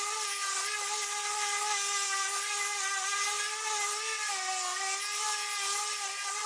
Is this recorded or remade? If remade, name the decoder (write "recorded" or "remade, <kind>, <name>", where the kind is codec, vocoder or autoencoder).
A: recorded